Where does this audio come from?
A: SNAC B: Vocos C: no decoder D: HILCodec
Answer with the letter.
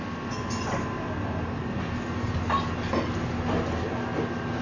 C